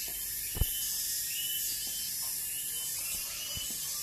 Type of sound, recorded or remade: recorded